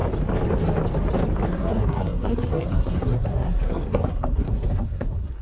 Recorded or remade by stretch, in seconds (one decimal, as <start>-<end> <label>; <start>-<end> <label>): 0.0-1.5 recorded; 1.5-5.4 remade